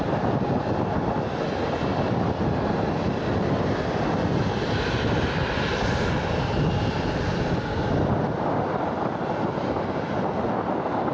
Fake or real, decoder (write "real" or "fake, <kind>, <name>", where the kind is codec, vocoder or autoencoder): real